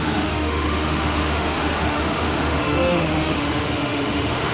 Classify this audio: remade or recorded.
remade